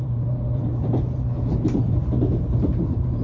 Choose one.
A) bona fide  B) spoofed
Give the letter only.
B